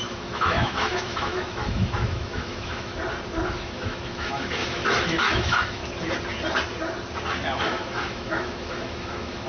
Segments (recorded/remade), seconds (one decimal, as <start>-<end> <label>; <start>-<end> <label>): 0.0-2.9 remade; 2.9-3.5 recorded; 3.5-5.8 remade; 5.8-7.6 recorded; 7.6-9.5 remade